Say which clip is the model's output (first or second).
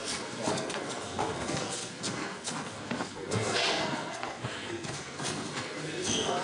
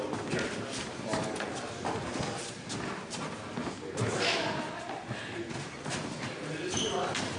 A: first